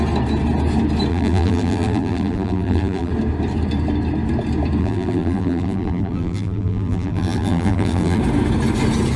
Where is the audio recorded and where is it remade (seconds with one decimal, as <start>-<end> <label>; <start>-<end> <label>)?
0.0-1.1 recorded; 1.1-3.1 remade; 3.1-4.8 recorded; 4.8-8.2 remade; 8.2-9.2 recorded